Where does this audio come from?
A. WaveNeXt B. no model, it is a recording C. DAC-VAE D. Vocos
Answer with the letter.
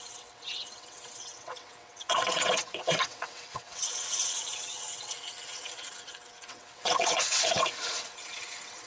A